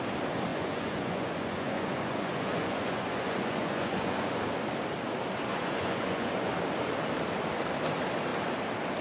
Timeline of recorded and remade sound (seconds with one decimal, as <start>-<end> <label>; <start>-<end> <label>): 0.0-0.5 recorded; 0.5-4.4 remade; 4.4-5.5 recorded; 5.5-6.5 remade; 6.5-9.0 recorded

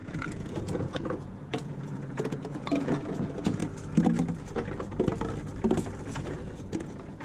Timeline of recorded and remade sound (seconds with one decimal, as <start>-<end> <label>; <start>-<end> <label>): 0.0-3.6 remade; 3.6-6.0 recorded; 6.0-7.2 remade